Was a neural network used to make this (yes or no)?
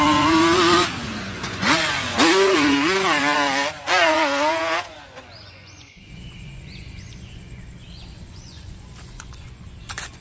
yes